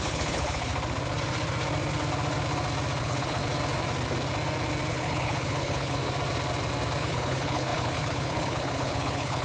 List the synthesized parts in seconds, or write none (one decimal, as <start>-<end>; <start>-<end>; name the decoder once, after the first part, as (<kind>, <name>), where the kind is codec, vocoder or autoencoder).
0.0-0.7 (codec, HILCodec); 3.0-3.4; 4.9-6.0; 7.0-9.4